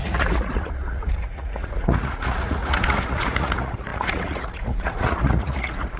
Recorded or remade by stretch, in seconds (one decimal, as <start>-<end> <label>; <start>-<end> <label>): 0.0-6.0 remade